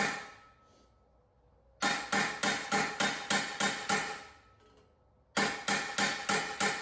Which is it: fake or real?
real